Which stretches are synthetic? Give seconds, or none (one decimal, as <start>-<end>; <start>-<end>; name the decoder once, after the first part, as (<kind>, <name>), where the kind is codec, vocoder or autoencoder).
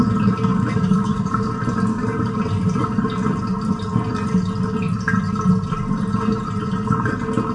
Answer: 0.5-1.5 (codec, DAC); 1.9-2.4